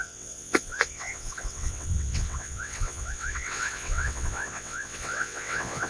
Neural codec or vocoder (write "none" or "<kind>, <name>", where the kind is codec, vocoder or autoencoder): vocoder, WaveNeXt